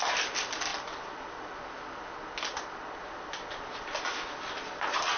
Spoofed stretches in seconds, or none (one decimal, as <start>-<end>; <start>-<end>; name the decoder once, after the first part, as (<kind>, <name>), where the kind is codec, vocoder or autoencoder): none